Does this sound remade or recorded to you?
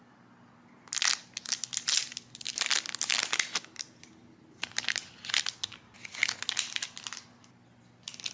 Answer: recorded